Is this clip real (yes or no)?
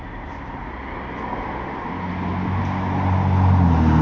yes